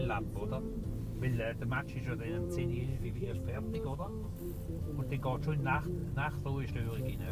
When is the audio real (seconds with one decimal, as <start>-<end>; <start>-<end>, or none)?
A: 0.0-2.9; 4.3-7.3